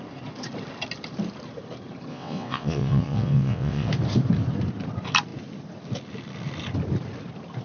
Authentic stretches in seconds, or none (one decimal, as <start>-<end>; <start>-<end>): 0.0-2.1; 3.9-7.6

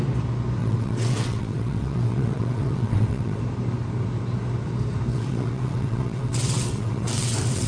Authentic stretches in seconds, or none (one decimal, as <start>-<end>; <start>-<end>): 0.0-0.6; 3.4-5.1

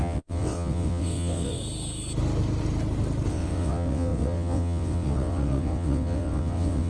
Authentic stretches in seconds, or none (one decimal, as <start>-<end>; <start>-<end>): 1.6-3.3

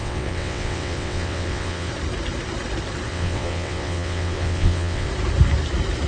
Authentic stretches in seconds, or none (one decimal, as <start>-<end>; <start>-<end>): 1.9-3.1; 5.1-6.1

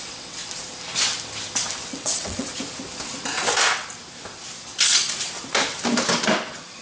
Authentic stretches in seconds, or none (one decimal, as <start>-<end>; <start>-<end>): 0.4-1.9; 2.5-6.8

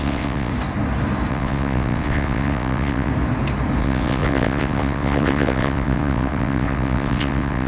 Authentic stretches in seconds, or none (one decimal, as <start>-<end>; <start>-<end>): 0.5-1.3; 3.1-3.8